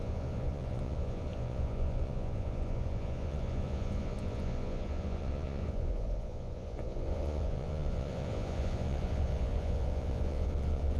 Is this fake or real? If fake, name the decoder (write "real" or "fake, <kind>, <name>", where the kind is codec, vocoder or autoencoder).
fake, vocoder, Vocos